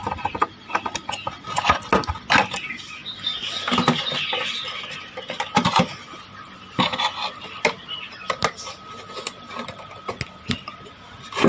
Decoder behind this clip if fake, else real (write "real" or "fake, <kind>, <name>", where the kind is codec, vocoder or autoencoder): real